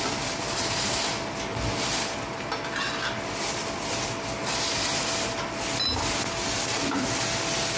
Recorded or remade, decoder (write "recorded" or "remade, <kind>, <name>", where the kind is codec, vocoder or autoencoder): recorded